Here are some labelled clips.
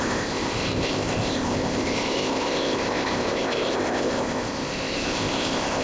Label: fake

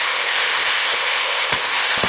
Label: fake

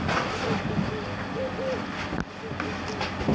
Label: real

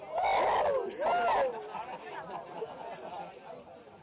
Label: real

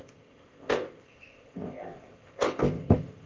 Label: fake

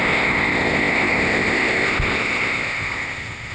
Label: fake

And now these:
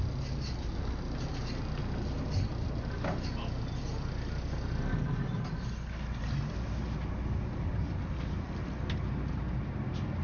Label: real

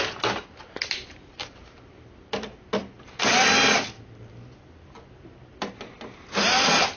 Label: real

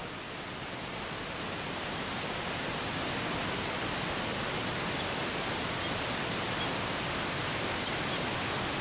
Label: real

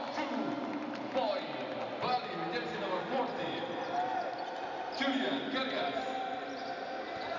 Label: real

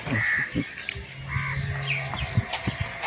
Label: real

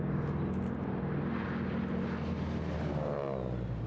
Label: real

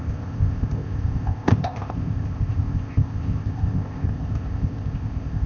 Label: fake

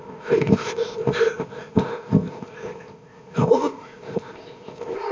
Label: fake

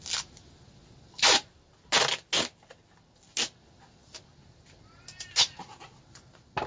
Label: real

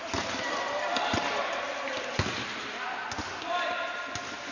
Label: real